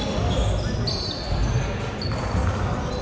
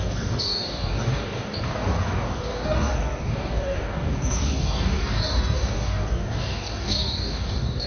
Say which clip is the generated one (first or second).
second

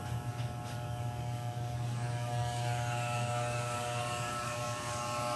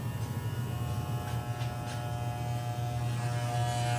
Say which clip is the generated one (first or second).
first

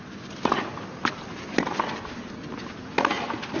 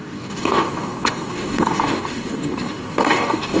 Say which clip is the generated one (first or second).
second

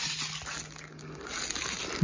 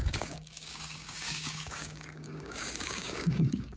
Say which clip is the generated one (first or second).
second